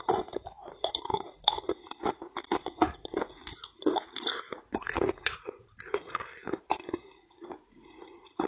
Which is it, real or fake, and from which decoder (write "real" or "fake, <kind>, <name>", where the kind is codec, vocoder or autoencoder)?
fake, vocoder, Vocos